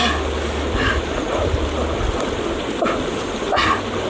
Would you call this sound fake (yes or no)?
no